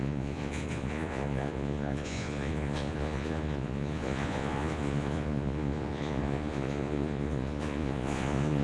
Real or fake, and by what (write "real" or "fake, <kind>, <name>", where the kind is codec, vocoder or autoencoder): fake, vocoder, Vocos